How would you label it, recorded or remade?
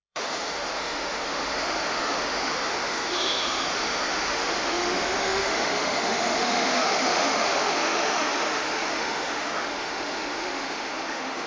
remade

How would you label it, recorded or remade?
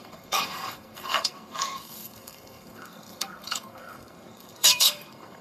remade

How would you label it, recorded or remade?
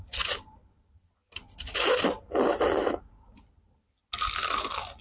recorded